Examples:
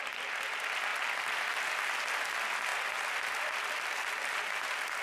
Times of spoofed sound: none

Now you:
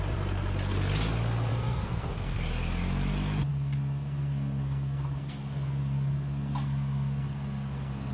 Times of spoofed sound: 1.5-2.4; 3.5-8.1

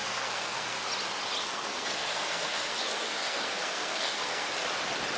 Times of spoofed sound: 0.0-0.9; 1.4-4.5

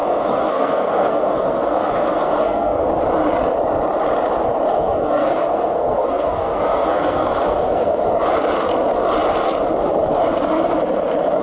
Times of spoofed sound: 0.0-2.9; 4.7-8.1

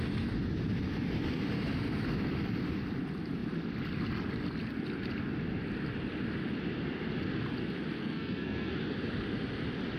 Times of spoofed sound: 8.0-8.7